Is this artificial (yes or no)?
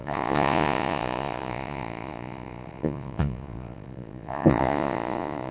yes